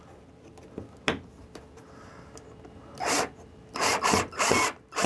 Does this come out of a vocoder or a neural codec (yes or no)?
no